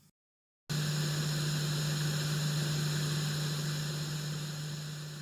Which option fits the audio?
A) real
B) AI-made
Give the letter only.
A